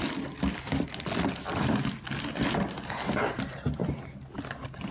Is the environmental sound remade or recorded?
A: recorded